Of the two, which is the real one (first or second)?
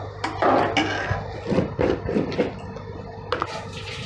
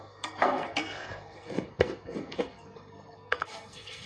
first